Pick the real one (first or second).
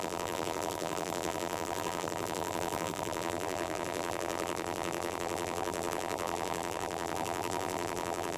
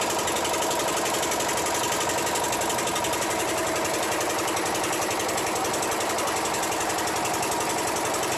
second